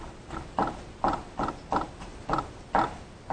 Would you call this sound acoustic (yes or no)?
yes